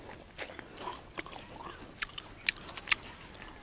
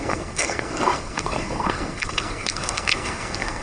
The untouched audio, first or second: first